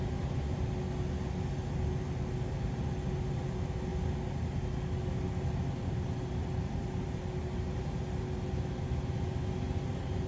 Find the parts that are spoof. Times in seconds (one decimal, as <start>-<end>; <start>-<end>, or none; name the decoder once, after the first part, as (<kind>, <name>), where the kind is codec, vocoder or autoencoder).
none